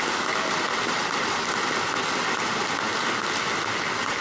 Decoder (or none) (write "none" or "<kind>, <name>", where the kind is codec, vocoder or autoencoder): none